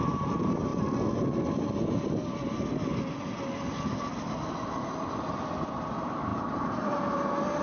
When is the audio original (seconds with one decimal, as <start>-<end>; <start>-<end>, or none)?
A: 0.7-5.3